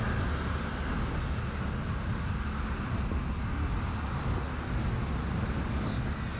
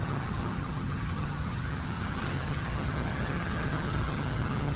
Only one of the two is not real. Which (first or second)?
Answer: second